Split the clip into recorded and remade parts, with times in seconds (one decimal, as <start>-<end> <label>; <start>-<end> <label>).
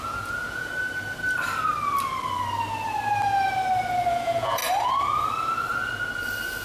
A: 0.0-0.7 remade; 0.7-4.1 recorded; 4.1-4.6 remade; 4.6-6.6 recorded